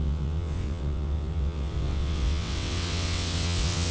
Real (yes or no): no